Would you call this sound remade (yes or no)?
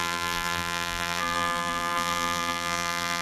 yes